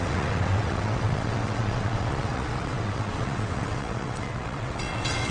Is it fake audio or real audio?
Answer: fake